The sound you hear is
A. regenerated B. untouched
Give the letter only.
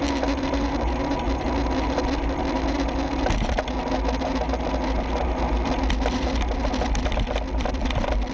B